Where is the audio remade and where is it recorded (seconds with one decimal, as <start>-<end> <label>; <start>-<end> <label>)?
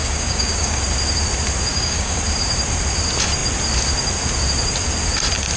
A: 0.0-0.8 remade; 0.8-1.7 recorded; 1.7-2.2 remade; 2.2-5.6 recorded